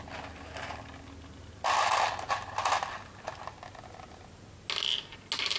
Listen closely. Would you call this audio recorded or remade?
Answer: recorded